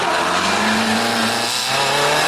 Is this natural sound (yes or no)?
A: yes